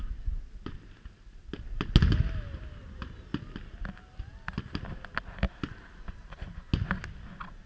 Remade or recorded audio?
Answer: recorded